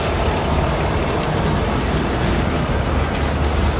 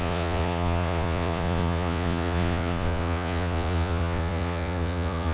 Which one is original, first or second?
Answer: first